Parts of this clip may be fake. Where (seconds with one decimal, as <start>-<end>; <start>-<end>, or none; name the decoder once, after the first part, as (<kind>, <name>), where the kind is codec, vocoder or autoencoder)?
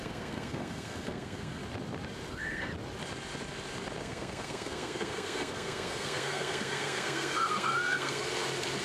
0.0-1.6 (codec, SNAC); 2.3-2.7; 4.0-8.2